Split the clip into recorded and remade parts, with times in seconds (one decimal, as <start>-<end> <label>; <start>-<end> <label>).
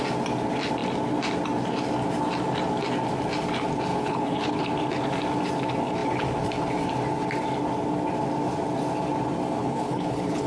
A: 0.0-3.9 recorded; 3.9-4.6 remade; 4.6-9.6 recorded; 9.6-10.5 remade